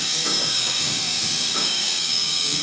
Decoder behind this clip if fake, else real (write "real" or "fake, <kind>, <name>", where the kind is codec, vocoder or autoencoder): fake, codec, DAC